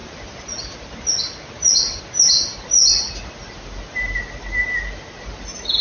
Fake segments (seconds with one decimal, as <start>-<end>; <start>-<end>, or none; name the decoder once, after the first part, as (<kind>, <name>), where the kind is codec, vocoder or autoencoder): none